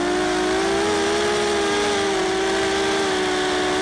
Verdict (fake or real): real